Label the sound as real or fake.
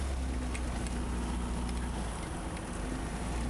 real